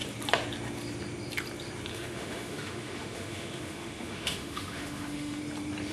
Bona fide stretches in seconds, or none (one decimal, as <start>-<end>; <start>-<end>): 0.0-1.9; 5.4-5.9